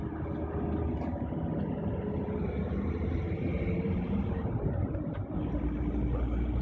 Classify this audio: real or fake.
real